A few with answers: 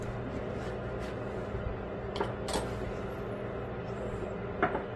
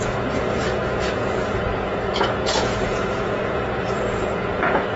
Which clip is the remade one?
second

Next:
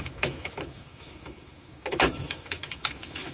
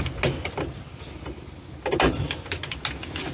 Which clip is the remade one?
first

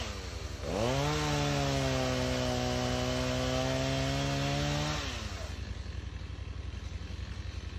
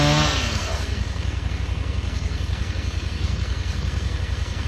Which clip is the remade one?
second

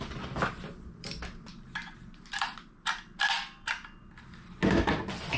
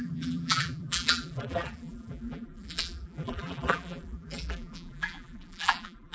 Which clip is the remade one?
second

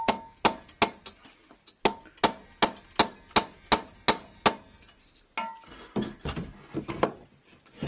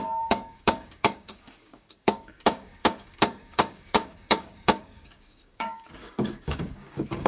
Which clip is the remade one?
second